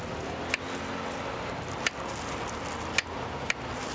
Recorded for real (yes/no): yes